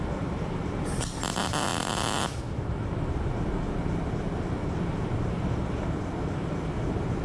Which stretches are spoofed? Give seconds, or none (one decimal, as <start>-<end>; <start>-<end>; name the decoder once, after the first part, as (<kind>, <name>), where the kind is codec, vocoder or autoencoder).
none